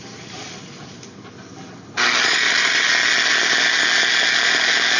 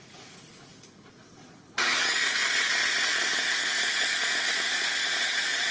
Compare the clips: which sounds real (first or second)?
first